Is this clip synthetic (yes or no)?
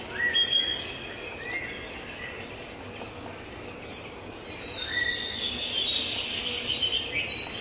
no